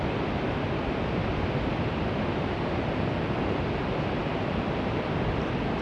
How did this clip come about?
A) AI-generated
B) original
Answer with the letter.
B